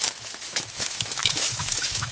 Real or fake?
fake